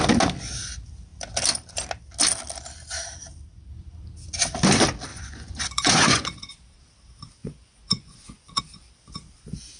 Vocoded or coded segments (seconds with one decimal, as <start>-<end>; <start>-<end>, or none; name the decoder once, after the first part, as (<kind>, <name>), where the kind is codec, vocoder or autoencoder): 5.1-6.5 (vocoder, Vocos); 7.4-8.6